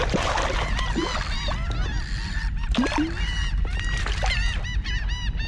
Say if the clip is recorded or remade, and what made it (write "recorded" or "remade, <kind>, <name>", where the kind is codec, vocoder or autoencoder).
recorded